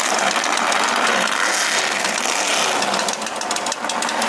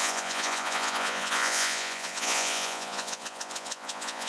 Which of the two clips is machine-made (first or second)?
second